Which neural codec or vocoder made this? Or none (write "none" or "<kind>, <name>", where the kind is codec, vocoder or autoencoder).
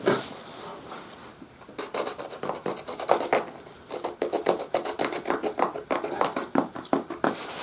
none